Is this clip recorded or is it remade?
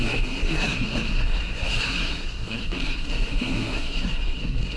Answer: remade